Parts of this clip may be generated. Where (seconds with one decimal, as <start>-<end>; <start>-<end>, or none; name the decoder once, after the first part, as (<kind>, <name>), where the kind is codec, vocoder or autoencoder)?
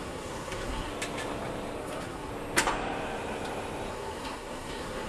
0.0-0.9 (codec, SNAC); 1.8-2.3; 3.9-5.1